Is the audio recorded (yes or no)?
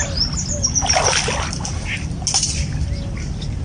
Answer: yes